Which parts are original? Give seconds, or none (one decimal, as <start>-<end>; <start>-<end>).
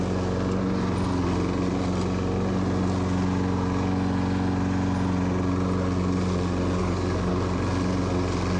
0.0-6.8; 7.3-8.6